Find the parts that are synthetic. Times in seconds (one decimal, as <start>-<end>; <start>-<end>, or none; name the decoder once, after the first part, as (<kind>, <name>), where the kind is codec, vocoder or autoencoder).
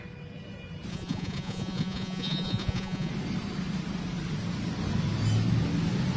0.9-3.1 (vocoder, Vocos)